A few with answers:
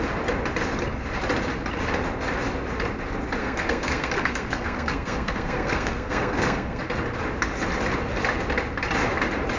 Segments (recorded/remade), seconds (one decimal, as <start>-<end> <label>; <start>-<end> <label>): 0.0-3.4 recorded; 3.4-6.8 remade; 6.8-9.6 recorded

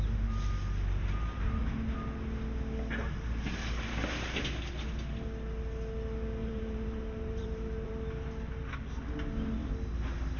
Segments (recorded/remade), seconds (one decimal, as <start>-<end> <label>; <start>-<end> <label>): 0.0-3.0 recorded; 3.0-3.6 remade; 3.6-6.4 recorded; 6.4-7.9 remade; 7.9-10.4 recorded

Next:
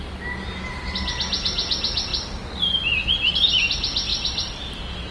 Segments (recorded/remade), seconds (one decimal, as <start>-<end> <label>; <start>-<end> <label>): 0.0-5.1 recorded

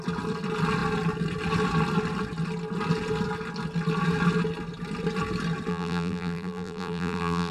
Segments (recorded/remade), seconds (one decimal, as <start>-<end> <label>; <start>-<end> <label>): 0.0-5.7 recorded; 5.7-7.5 remade

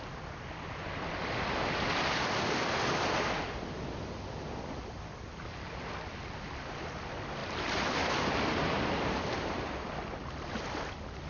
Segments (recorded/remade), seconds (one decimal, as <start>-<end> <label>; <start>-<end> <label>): 0.0-11.3 recorded